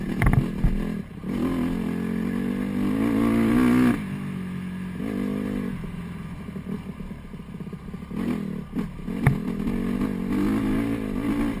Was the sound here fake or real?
real